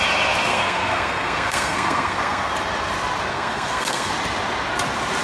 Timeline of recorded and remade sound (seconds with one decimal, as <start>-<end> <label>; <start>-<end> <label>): 0.0-0.5 recorded; 0.5-2.5 remade; 2.5-3.3 recorded; 3.3-4.1 remade; 4.1-5.2 recorded